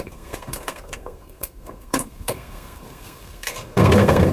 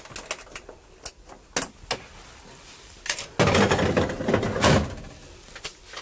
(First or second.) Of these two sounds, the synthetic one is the first